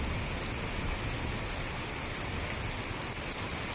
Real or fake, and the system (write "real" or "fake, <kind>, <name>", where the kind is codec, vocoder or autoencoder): real